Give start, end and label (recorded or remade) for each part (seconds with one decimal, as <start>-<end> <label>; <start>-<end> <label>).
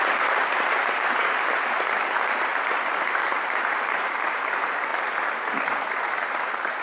0.0-4.9 remade; 4.9-5.9 recorded; 5.9-6.8 remade